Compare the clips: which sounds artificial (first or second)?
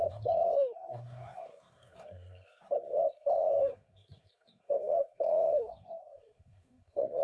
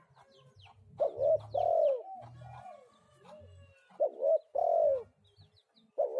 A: first